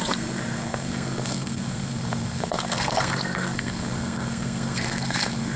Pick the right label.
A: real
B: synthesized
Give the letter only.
B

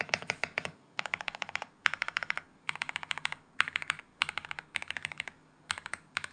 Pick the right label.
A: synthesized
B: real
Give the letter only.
A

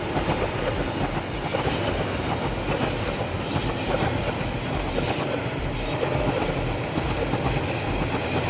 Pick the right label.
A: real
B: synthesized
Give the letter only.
A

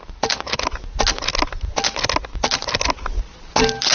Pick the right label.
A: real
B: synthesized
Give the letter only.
A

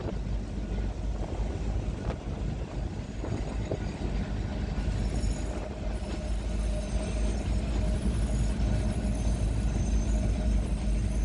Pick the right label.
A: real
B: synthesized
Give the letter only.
A